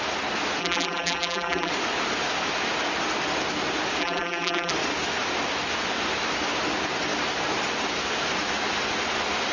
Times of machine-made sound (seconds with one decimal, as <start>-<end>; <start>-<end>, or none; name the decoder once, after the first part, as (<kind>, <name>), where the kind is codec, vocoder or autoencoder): 0.6-1.7 (vocoder, BigVGAN v2); 4.0-4.7